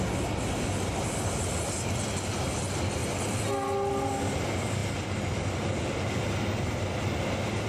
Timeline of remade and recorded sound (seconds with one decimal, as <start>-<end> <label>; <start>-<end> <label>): 0.0-7.7 recorded